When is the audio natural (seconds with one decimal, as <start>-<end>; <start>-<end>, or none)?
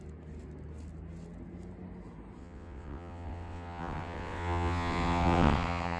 0.0-2.4